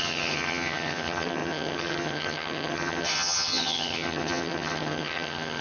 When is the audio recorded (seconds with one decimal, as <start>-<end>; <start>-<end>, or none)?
none